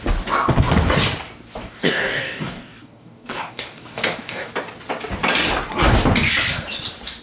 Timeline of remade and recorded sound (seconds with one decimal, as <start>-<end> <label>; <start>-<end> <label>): 0.0-1.6 recorded; 1.6-4.5 remade; 4.5-7.2 recorded